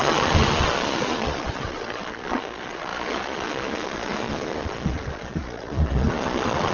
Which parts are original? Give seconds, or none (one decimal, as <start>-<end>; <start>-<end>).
none